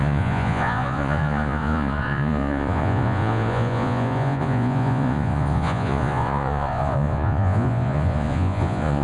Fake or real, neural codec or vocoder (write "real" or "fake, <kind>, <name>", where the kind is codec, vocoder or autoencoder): fake, vocoder, Vocos